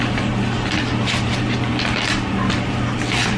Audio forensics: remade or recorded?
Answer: recorded